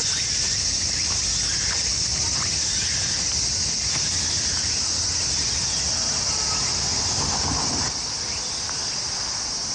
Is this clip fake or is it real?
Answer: real